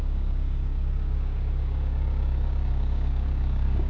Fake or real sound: fake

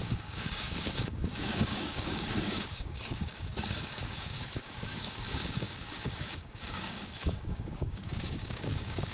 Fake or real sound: fake